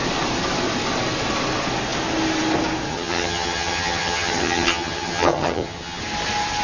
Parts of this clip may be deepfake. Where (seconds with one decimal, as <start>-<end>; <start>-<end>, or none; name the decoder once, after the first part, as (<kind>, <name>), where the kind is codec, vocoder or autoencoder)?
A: 2.9-6.0 (vocoder, HiFi-GAN)